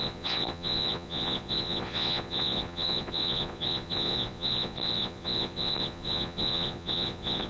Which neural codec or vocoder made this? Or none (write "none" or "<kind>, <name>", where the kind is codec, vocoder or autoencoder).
vocoder, Vocos